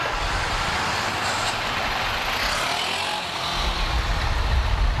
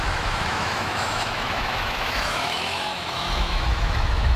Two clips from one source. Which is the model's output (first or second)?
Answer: second